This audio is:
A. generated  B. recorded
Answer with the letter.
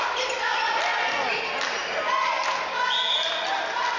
B